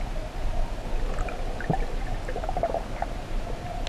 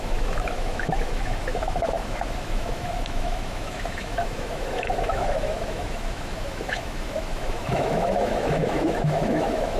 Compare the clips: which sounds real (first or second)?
first